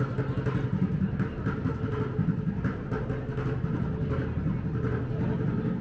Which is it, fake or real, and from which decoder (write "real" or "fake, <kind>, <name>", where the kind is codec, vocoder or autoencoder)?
real